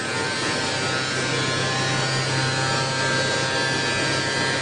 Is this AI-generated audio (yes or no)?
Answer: no